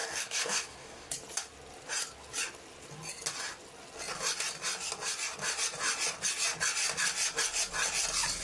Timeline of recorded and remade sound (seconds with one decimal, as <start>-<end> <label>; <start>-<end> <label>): 0.0-1.1 remade; 1.1-8.4 recorded